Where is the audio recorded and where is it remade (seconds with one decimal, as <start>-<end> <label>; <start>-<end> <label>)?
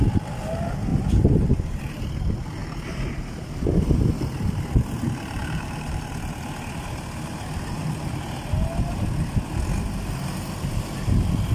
0.0-5.4 recorded; 5.4-6.1 remade; 6.1-7.3 recorded; 7.3-7.8 remade; 7.8-11.5 recorded